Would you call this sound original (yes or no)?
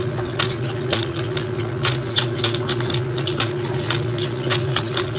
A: no